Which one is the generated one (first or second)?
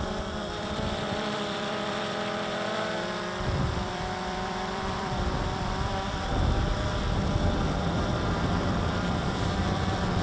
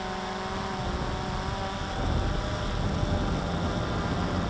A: first